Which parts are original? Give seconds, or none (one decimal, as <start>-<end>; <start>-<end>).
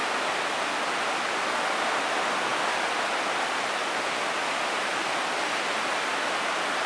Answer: 0.0-6.9